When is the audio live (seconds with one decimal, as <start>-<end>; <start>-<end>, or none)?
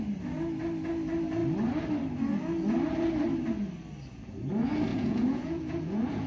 0.0-4.9